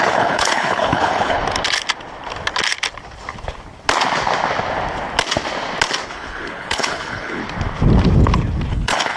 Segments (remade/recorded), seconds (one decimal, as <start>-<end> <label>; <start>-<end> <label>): 0.0-1.4 remade; 1.4-6.1 recorded; 6.1-7.4 remade; 7.4-8.7 recorded; 8.7-9.2 remade

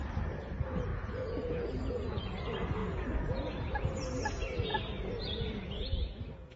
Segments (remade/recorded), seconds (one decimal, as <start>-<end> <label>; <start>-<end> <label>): 0.0-0.9 recorded; 0.9-2.4 remade; 2.4-2.8 recorded; 2.8-3.7 remade; 3.7-4.7 recorded; 4.7-6.6 remade

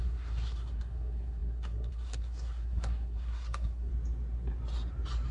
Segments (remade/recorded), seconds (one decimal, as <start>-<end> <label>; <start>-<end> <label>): 0.0-3.9 remade; 3.9-5.3 recorded

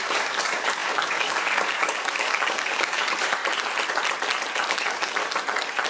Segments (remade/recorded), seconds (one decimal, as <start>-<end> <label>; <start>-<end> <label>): 0.0-3.4 remade; 3.4-4.7 recorded; 4.7-5.2 remade; 5.2-5.9 recorded